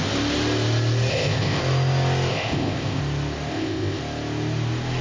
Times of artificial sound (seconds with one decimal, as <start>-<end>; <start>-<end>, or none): 1.1-1.6; 2.3-3.0; 3.5-4.0